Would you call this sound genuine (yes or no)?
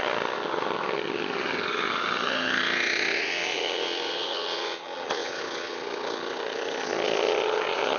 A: no